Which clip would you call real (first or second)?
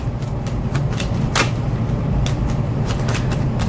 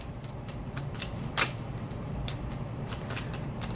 first